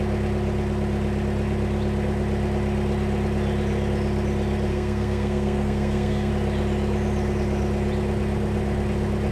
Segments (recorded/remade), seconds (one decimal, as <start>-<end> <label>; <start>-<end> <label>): 0.0-4.7 recorded; 4.7-6.3 remade; 6.3-9.3 recorded